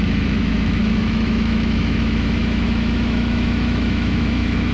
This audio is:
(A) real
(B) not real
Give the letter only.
B